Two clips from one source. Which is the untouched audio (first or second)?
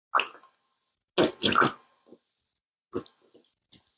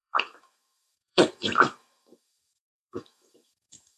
first